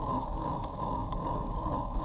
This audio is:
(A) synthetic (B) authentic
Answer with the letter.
A